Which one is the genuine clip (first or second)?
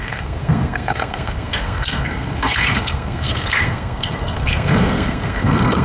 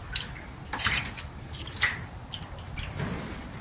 second